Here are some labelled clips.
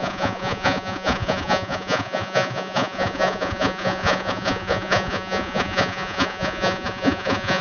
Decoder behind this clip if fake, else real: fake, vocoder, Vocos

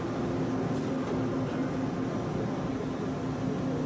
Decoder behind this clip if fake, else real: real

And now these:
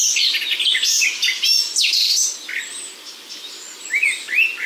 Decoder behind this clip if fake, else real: real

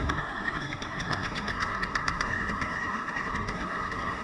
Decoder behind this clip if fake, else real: fake, codec, SNAC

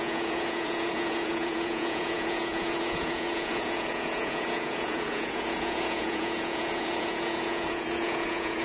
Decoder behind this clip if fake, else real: fake, vocoder, Vocos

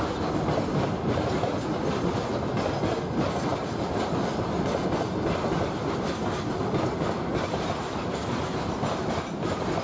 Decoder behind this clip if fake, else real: real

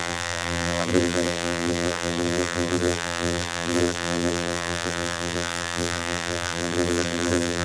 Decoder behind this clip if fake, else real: fake, vocoder, BigVGAN v2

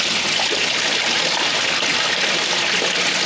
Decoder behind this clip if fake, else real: real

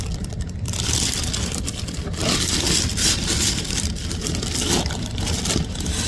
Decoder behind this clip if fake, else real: fake, vocoder, BigVGAN v2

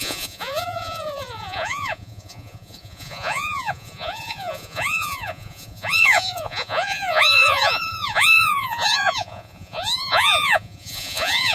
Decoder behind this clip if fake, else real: fake, vocoder, Vocos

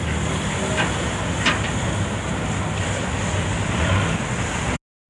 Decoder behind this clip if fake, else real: real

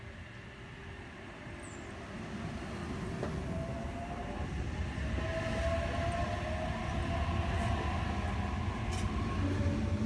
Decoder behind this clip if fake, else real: real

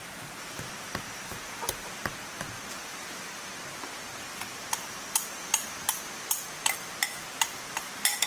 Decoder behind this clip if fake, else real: real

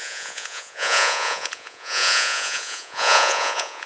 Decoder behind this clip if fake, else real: fake, vocoder, Vocos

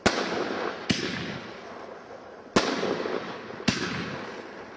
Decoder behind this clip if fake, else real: real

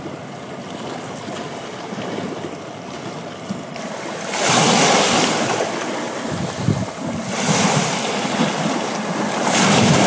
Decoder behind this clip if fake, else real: real